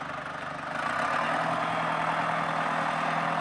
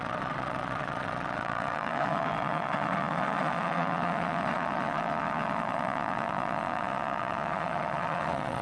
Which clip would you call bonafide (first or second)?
first